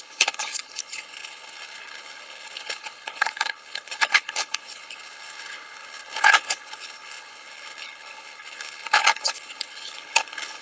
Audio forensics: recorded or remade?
remade